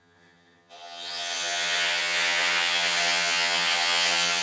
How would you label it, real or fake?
fake